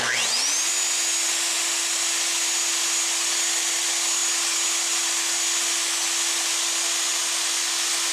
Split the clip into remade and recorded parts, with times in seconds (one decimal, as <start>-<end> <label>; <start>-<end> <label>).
0.0-8.1 recorded